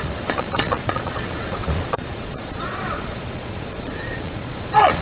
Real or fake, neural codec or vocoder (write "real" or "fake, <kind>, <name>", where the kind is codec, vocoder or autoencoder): fake, vocoder, Vocos